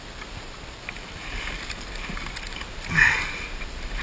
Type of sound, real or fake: real